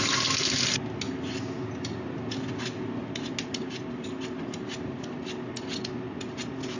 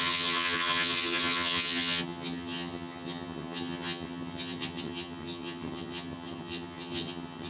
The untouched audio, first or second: first